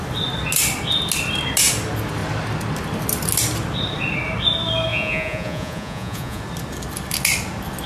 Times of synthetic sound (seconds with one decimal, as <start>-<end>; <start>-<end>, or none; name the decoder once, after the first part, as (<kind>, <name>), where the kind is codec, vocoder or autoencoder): 4.9-6.4 (vocoder, Vocos)